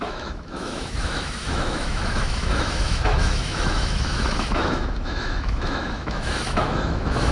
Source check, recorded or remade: remade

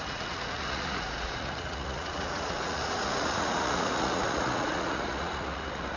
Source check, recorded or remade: remade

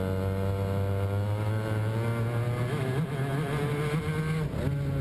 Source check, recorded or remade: recorded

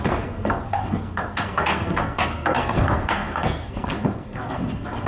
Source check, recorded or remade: remade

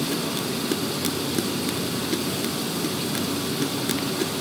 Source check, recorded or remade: recorded